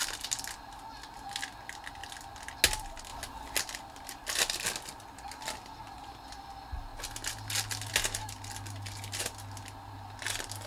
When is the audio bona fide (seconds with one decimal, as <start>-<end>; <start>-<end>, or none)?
0.0-10.7